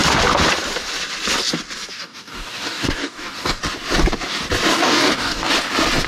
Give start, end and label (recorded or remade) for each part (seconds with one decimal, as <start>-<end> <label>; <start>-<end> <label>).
0.0-1.9 recorded; 1.9-3.6 remade; 3.6-4.7 recorded; 4.7-5.5 remade; 5.5-6.1 recorded